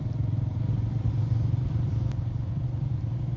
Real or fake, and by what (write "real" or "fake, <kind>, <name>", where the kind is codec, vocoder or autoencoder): fake, vocoder, BigVGAN v2